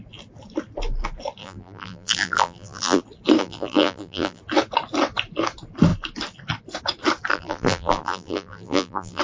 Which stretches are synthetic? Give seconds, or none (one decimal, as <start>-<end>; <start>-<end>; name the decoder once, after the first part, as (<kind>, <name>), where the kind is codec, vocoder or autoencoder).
1.4-3.0 (vocoder, BigVGAN v2); 3.4-4.4; 7.3-9.2

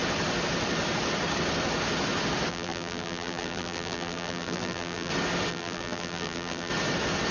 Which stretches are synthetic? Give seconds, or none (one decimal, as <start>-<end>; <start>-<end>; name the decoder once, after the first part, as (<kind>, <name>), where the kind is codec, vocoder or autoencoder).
2.5-5.1 (vocoder, BigVGAN v2); 5.5-6.7

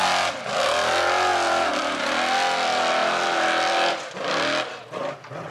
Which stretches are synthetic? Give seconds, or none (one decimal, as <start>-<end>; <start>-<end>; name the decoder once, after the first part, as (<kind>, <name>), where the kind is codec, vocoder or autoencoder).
none